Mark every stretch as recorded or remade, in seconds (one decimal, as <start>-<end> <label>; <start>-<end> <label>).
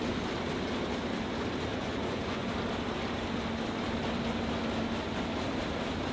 0.0-1.7 recorded; 1.7-2.5 remade; 2.5-6.1 recorded